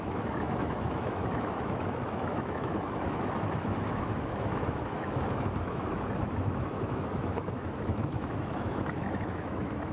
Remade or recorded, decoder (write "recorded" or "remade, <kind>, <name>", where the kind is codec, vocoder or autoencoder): remade, autoencoder, DAC-VAE